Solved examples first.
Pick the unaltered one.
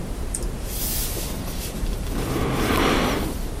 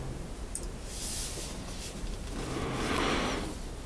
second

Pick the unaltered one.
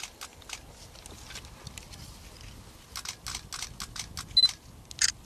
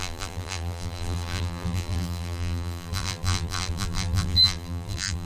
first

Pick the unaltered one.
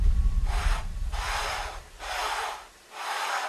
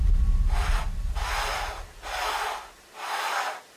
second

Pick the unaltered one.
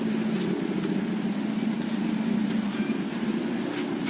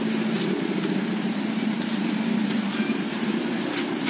first